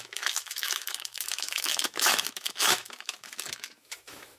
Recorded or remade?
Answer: remade